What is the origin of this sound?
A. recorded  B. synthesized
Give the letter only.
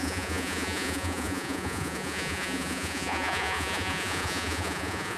B